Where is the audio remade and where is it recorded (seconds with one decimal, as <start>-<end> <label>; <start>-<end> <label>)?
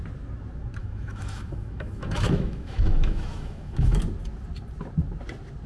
0.0-0.8 recorded; 0.8-4.0 remade; 4.0-5.7 recorded